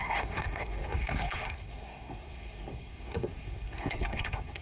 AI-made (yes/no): yes